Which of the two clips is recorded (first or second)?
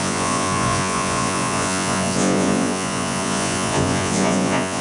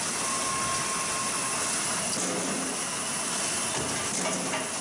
second